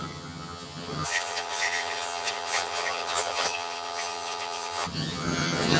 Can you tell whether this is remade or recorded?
remade